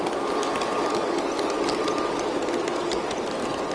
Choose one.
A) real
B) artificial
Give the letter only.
A